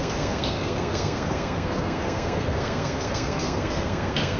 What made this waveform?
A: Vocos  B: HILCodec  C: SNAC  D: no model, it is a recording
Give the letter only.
C